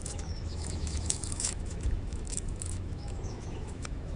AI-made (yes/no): yes